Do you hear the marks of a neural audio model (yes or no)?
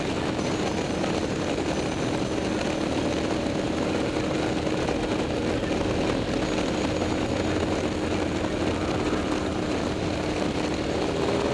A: no